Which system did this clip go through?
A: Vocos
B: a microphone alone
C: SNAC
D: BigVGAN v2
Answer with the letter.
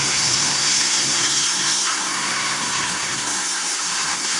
C